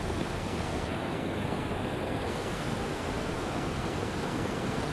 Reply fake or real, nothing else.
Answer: fake